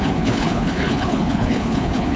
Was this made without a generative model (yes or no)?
no